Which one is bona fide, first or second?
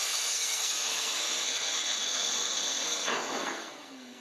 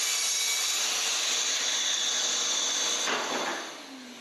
second